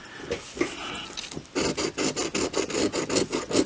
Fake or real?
real